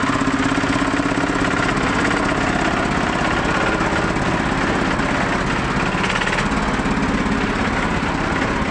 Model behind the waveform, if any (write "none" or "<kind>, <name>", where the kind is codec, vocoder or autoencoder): none